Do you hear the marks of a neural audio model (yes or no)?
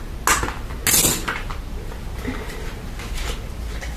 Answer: no